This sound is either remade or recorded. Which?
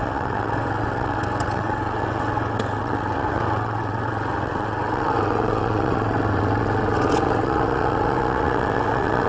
remade